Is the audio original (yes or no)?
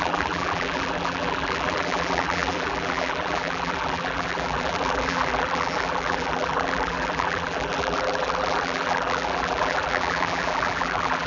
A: no